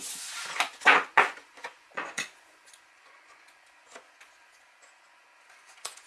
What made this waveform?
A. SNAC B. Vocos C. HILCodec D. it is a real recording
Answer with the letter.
B